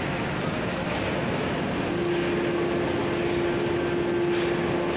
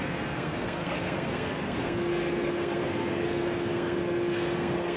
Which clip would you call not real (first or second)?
second